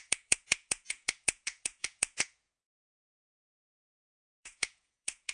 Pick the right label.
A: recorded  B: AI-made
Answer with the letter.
B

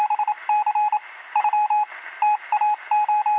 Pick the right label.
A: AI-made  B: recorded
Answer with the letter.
B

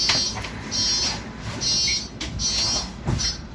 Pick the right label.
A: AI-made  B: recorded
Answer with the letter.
B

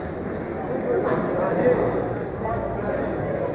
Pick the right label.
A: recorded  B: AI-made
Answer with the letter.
A